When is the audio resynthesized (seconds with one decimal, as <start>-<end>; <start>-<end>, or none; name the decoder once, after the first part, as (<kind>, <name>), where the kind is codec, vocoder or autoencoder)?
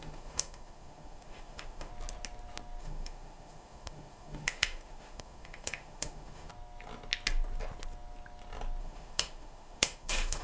0.0-1.9 (autoencoder, DAC-VAE); 2.8-6.5; 8.8-10.4